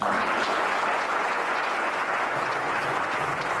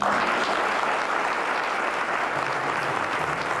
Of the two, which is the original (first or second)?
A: second